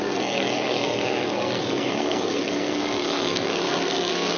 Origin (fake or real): fake